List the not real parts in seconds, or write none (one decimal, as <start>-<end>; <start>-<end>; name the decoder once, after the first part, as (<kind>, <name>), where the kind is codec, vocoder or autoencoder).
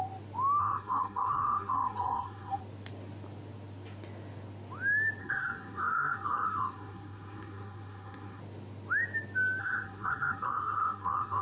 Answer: 0.6-2.6 (codec, SNAC); 5.2-8.4; 9.6-11.4